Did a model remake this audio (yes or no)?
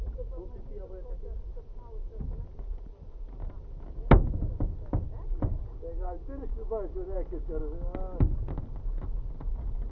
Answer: no